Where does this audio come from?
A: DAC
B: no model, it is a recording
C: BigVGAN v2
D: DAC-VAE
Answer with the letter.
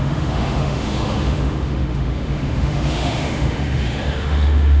D